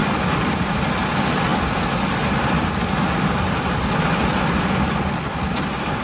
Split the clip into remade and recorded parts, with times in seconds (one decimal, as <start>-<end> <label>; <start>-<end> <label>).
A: 0.0-6.0 recorded